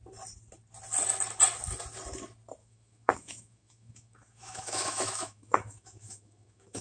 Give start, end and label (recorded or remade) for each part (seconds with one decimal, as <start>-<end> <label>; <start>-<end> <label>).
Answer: 0.0-2.6 recorded; 2.6-6.8 remade